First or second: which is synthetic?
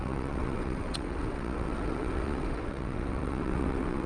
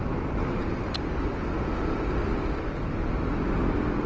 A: first